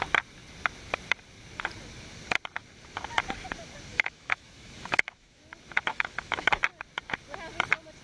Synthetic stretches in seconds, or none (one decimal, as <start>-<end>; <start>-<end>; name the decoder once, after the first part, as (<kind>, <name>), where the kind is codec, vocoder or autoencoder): 3.9-5.4 (autoencoder, DAC-VAE); 5.9-6.5